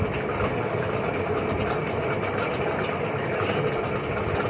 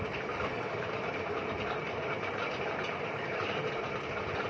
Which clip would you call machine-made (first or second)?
second